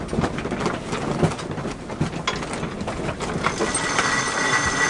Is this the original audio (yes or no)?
yes